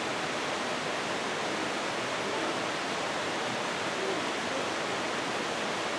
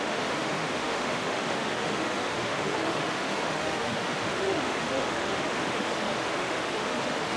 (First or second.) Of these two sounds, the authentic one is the first